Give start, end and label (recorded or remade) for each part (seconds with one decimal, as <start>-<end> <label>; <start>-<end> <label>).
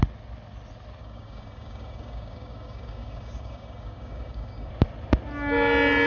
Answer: 0.0-1.0 recorded; 1.0-4.7 remade; 4.7-6.1 recorded